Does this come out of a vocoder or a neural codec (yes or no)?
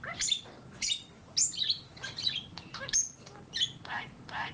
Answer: no